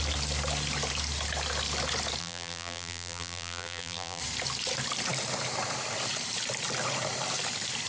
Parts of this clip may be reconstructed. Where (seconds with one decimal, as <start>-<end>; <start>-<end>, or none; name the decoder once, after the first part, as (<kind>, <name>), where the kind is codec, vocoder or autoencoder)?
2.2-4.2 (vocoder, BigVGAN v2)